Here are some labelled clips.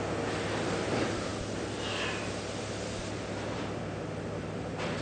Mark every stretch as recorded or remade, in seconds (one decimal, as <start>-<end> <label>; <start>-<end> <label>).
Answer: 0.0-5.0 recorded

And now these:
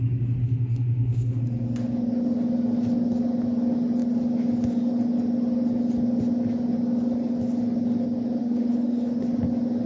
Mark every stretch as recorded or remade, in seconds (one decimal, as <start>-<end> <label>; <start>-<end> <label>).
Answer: 0.0-0.4 recorded; 0.4-1.4 remade; 1.4-8.4 recorded; 8.4-9.2 remade; 9.2-9.9 recorded

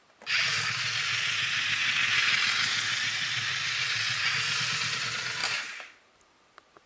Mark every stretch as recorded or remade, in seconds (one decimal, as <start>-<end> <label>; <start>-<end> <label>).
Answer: 0.0-6.9 recorded

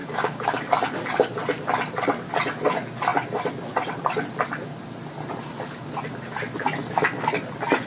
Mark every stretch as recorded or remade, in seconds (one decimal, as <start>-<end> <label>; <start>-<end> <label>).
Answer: 0.0-0.7 remade; 0.7-7.9 recorded

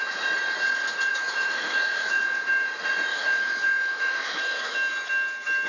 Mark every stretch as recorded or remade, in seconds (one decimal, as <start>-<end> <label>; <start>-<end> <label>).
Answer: 0.0-1.1 recorded; 1.1-2.2 remade; 2.2-3.1 recorded; 3.1-4.9 remade; 4.9-5.7 recorded